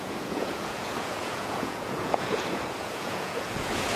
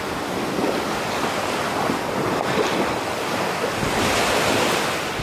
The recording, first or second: second